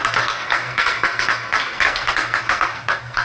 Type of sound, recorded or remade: remade